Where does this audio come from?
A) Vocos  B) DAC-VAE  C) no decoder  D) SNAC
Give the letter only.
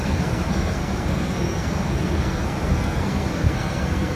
D